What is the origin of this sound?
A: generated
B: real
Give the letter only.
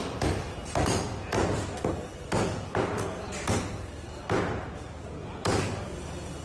B